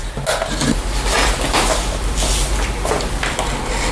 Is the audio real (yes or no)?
yes